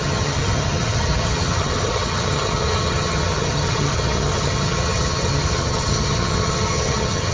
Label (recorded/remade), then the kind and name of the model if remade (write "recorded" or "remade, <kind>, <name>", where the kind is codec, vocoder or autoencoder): remade, vocoder, HiFi-GAN